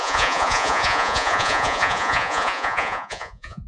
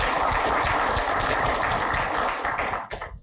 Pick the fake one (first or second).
first